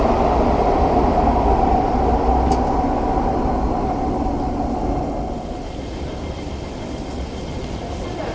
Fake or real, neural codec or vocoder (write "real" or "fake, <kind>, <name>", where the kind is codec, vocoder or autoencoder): real